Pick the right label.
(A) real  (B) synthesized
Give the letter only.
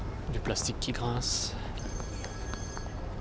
A